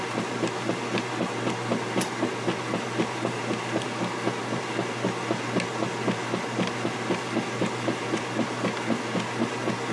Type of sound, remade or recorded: recorded